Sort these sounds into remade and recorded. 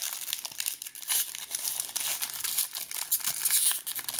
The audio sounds recorded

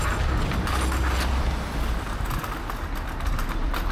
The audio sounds recorded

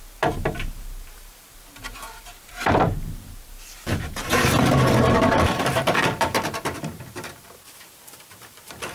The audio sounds remade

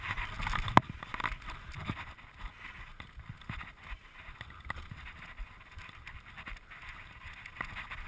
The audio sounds recorded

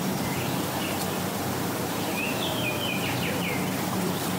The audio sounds remade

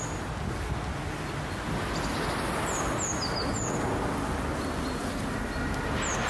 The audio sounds recorded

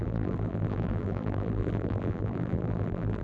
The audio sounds remade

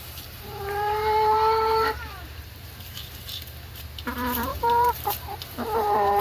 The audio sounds remade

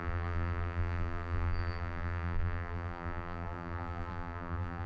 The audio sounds remade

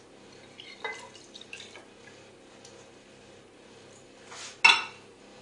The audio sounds recorded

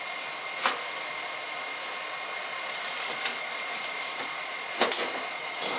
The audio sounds recorded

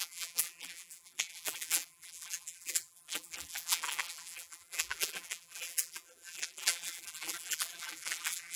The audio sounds remade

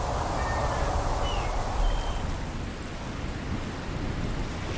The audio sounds recorded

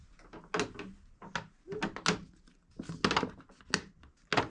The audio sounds recorded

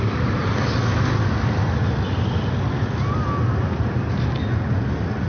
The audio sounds recorded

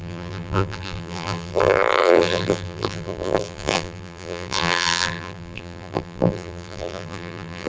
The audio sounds remade